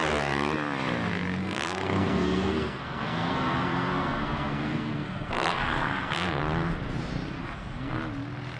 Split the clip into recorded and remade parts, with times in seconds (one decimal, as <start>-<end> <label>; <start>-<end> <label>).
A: 0.0-1.4 recorded; 1.4-6.4 remade; 6.4-7.4 recorded; 7.4-8.0 remade; 8.0-8.6 recorded